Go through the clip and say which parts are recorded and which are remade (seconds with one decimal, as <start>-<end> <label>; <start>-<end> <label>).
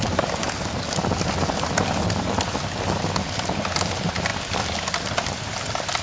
0.0-6.0 recorded